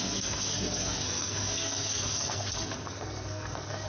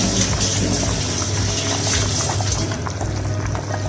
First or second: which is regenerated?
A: first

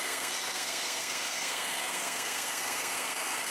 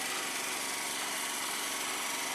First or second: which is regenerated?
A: first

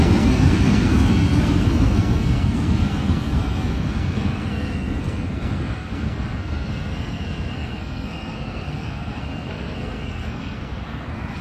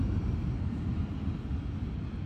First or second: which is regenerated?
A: first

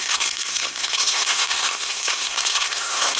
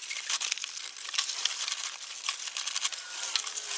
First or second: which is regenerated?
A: first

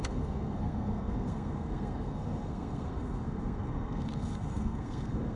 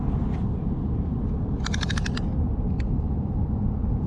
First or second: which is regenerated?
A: first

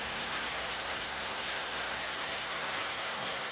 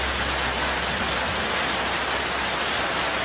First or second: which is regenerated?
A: first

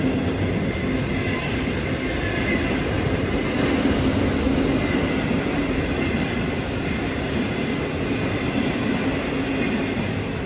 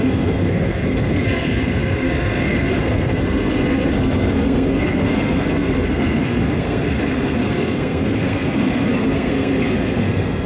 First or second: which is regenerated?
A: second